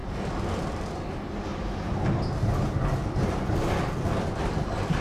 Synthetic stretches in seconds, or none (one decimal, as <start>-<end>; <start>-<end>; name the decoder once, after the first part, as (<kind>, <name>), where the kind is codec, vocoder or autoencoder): none